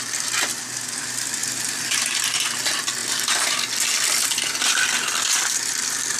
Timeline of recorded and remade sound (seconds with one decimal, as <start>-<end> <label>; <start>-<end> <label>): 0.0-6.2 recorded